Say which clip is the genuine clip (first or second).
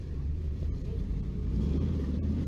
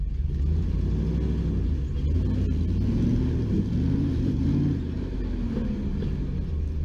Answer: second